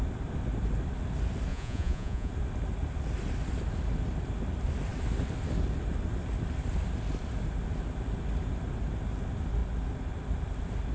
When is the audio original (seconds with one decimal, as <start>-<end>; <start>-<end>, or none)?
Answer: 0.0-1.5; 2.3-10.9